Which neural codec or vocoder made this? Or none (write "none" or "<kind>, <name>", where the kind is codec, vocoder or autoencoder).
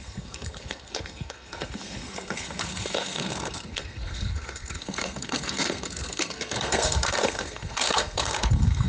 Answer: codec, SNAC